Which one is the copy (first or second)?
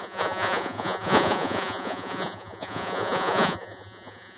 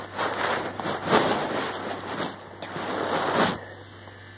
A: first